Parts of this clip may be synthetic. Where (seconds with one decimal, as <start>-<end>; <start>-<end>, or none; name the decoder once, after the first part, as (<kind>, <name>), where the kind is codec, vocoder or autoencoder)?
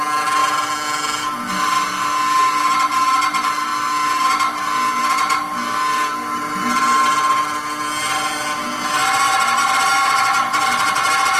none